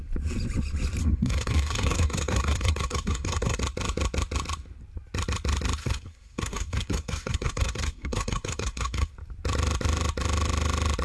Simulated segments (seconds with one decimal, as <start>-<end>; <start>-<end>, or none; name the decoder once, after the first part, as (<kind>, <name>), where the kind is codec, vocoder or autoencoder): 1.0-3.6 (codec, SNAC); 5.8-9.1